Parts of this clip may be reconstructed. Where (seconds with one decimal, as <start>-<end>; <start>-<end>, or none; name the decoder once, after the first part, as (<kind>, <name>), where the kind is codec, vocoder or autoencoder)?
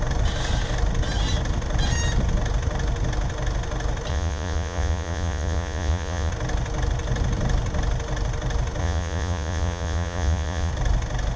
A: 4.1-6.3 (vocoder, Vocos); 8.8-10.7